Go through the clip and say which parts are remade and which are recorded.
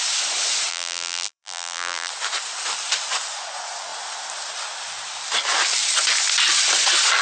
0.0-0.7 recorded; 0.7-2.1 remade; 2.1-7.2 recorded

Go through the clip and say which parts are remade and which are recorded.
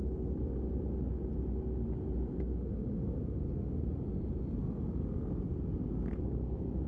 0.0-6.9 recorded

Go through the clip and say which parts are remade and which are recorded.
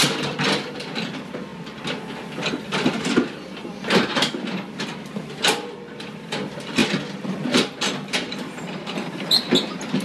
0.0-1.5 remade; 1.5-2.6 recorded; 2.6-10.0 remade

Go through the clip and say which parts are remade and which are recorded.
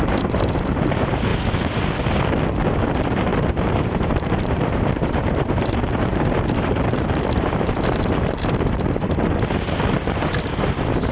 0.0-1.3 remade; 1.3-2.8 recorded; 2.8-11.1 remade